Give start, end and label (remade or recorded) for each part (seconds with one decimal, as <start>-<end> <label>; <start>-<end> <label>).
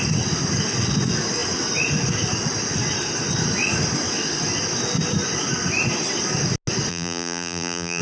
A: 0.0-6.9 recorded; 6.9-8.0 remade